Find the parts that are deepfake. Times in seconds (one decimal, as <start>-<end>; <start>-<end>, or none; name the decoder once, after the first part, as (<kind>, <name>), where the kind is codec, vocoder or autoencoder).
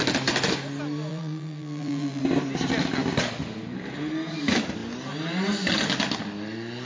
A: 1.1-2.2 (vocoder, BigVGAN v2)